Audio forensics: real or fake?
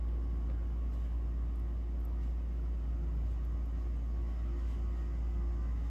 real